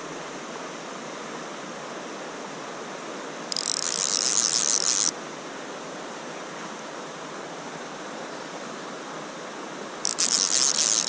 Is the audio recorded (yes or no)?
yes